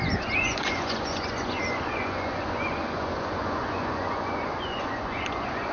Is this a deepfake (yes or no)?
yes